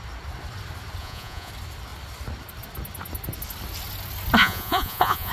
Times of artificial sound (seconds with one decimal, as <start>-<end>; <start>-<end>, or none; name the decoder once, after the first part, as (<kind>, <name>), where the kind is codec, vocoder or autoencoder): 1.0-1.5 (vocoder, Vocos); 4.4-5.3